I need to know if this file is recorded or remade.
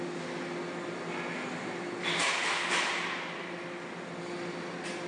recorded